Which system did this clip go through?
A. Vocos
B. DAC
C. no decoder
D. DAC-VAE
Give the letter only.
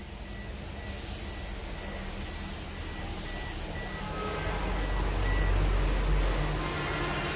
C